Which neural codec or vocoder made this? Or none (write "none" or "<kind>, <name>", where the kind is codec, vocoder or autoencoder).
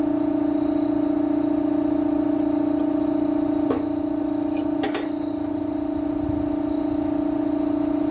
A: none